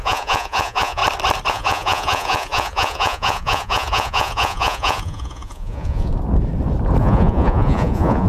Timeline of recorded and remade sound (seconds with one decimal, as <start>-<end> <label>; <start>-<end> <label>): 0.0-1.0 remade; 1.0-1.5 recorded; 1.5-6.1 remade; 6.1-7.0 recorded; 7.0-8.3 remade